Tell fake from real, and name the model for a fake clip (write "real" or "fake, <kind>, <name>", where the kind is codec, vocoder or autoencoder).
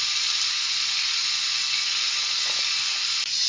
real